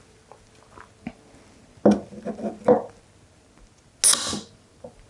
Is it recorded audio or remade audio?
recorded